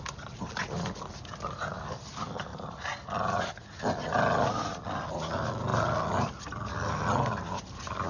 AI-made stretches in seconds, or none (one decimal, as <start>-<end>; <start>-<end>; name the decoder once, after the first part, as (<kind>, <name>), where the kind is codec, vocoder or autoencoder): none